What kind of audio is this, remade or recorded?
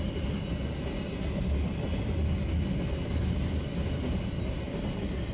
recorded